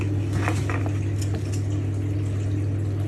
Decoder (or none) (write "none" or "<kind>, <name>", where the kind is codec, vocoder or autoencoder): none